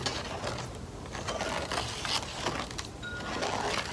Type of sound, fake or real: real